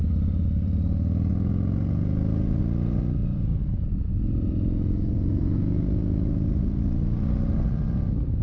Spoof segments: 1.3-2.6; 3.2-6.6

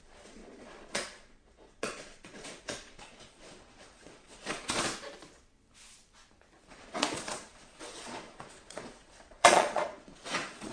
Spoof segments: 0.0-4.9; 6.7-10.7

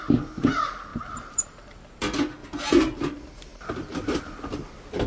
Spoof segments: 0.9-2.0

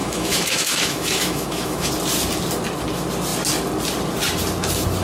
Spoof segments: 0.0-1.9

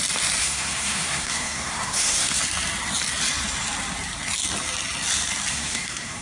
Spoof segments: 0.4-2.4; 5.5-6.2

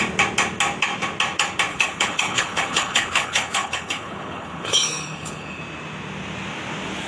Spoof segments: 1.7-5.6